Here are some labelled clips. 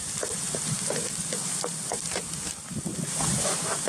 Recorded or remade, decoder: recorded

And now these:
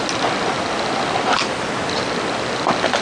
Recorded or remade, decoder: recorded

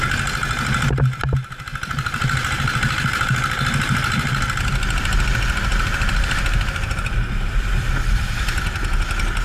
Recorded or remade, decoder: recorded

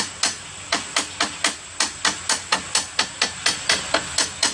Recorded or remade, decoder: recorded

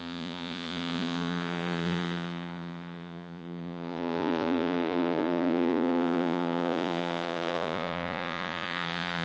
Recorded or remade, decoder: remade, vocoder, Vocos